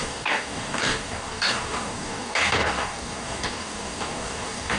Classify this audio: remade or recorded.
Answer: remade